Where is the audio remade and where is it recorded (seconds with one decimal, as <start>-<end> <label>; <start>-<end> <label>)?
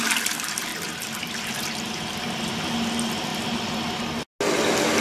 0.0-5.0 recorded